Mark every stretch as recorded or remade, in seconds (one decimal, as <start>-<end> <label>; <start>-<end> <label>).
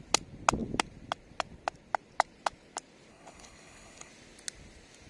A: 0.0-3.1 recorded; 3.1-4.1 remade; 4.1-5.1 recorded